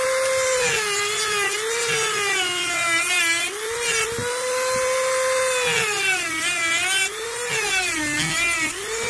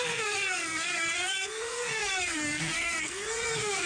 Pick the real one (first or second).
first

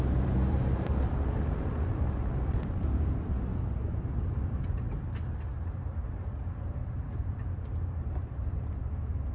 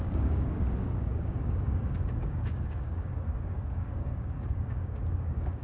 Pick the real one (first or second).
first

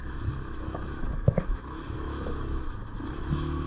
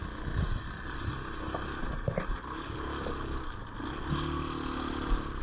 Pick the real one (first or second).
second